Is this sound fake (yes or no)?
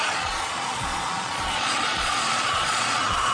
yes